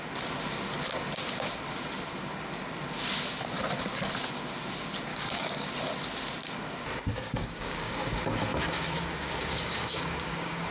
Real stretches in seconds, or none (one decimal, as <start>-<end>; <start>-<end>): 0.0-5.1; 5.7-7.1; 7.9-8.5